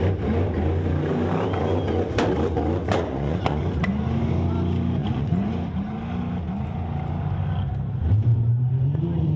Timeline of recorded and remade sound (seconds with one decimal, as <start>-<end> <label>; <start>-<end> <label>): 0.0-2.8 recorded; 2.8-3.6 remade; 3.6-5.0 recorded; 5.0-5.5 remade; 5.5-9.4 recorded

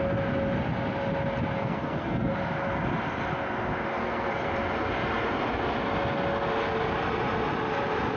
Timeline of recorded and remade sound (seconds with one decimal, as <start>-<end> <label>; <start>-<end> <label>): 0.0-1.6 recorded; 1.6-2.3 remade; 2.3-4.0 recorded; 4.0-4.5 remade; 4.5-8.2 recorded